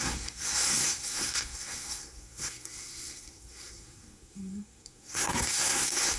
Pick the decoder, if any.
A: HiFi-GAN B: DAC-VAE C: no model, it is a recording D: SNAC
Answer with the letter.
D